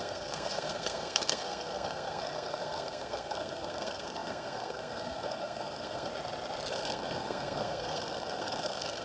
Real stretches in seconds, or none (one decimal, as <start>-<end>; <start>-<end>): 6.1-6.7